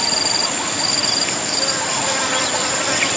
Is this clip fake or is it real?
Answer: real